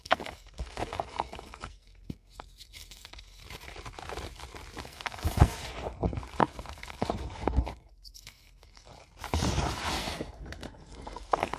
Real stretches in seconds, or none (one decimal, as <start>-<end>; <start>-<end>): 3.4-4.8; 8.9-9.9